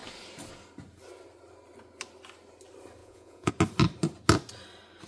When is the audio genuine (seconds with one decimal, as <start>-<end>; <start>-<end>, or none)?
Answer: 0.0-3.0; 3.5-5.1